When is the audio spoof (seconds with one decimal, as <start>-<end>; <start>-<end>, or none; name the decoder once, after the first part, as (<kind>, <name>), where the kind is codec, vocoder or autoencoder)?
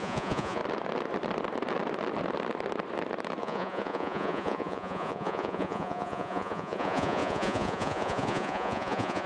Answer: 0.0-0.6 (vocoder, Vocos); 3.4-9.3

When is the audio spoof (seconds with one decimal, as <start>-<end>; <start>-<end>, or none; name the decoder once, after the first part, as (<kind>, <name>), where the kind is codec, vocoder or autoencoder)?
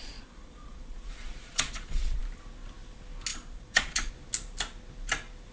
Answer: 0.0-2.2 (vocoder, Vocos); 3.3-4.1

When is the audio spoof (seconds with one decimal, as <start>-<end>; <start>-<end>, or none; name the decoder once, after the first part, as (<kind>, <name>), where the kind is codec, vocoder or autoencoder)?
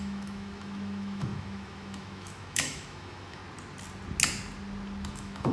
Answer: 0.0-3.4 (autoencoder, DAC-VAE); 5.1-5.5